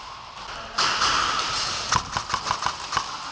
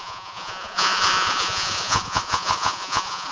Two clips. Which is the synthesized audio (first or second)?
second